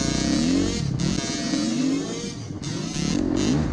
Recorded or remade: recorded